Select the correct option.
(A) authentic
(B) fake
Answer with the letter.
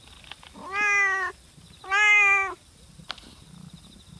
A